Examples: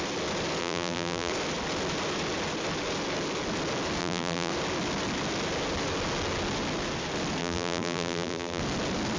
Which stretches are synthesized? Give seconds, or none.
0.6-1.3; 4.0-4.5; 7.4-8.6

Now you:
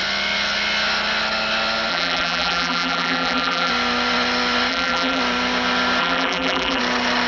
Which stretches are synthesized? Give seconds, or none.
1.9-3.7; 4.7-5.2; 6.0-6.8

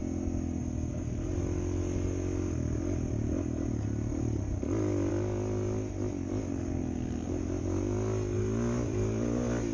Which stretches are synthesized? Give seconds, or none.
none

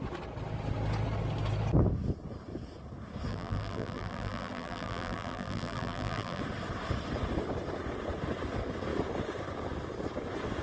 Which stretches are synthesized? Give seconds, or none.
3.3-6.4

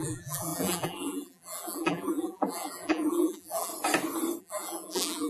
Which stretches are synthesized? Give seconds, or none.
0.0-3.7; 4.4-5.3

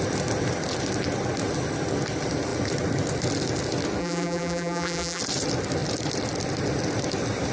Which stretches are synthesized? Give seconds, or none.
4.0-5.2

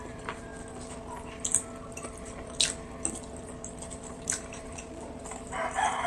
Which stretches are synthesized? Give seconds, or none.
0.0-0.5; 4.2-6.1

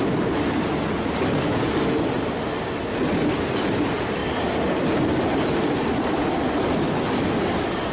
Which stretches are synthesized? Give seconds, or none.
none